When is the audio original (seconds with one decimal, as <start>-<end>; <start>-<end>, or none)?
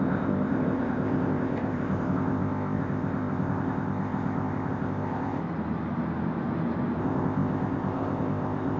5.4-7.0